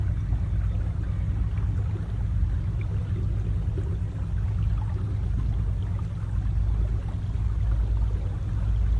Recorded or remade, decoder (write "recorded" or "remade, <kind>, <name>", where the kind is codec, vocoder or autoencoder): recorded